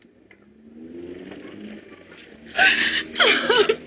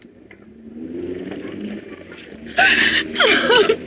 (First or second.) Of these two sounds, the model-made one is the second